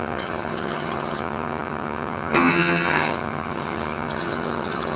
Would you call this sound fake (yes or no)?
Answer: yes